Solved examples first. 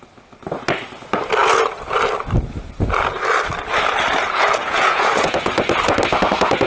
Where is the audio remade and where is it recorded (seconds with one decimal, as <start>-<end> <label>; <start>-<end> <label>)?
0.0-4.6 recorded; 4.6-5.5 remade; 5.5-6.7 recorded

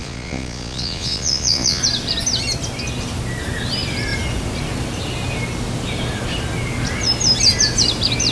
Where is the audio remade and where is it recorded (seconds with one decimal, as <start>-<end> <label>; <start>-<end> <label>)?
0.0-1.8 remade; 1.8-8.3 recorded

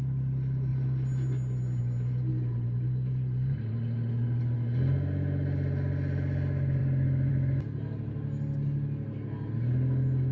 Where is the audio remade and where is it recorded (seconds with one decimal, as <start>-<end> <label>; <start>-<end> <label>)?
0.0-10.3 recorded